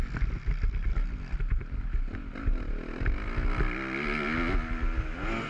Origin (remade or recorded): recorded